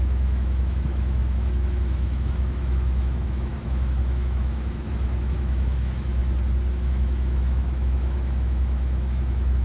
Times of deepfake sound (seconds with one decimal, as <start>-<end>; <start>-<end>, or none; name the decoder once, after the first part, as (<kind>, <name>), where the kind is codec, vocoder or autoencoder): 0.0-6.2 (autoencoder, DAC-VAE); 6.7-9.6